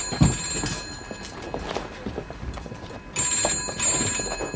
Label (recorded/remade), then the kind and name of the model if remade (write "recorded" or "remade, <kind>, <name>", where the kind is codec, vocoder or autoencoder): recorded